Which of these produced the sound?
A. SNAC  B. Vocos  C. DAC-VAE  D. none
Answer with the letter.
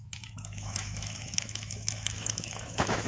C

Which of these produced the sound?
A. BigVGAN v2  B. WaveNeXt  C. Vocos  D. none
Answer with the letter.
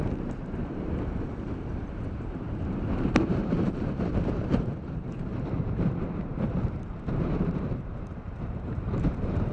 A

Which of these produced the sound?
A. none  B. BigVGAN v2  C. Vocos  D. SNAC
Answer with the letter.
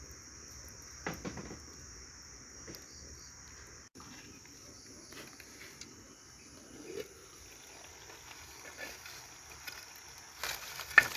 A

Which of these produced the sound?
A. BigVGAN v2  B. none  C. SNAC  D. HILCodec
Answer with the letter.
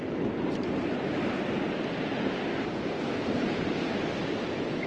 B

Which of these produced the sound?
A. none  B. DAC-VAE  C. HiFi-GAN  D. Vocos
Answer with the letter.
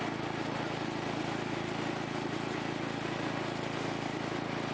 A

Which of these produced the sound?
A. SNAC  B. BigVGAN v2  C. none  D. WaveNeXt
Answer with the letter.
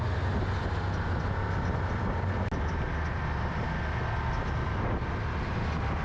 C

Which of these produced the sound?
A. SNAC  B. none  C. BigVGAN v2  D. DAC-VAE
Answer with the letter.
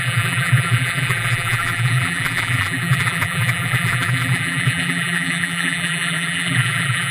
C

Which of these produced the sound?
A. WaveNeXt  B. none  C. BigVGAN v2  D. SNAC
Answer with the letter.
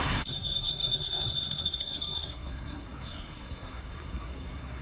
D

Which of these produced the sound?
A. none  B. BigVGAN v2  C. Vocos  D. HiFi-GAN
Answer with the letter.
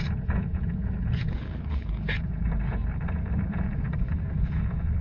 C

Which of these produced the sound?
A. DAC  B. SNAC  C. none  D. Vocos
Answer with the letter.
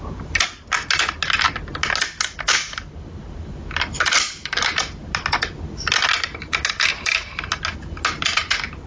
C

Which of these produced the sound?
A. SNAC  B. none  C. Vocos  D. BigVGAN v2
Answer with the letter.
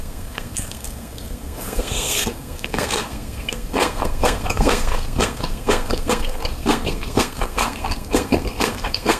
A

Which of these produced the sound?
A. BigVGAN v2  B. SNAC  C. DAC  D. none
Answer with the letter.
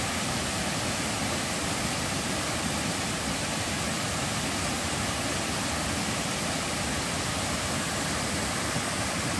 D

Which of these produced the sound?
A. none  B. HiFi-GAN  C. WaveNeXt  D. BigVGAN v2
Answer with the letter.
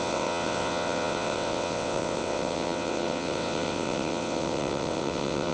C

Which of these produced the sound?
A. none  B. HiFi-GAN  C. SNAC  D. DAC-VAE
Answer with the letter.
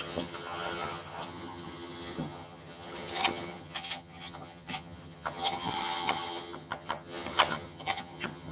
B